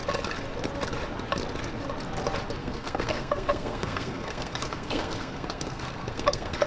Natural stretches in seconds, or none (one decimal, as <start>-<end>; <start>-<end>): 0.0-2.6